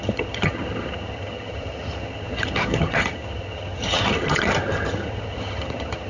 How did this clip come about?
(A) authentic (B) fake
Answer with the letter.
B